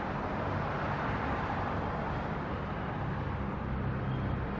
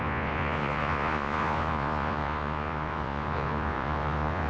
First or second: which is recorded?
first